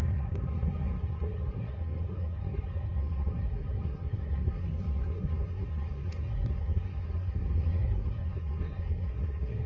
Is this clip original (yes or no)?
no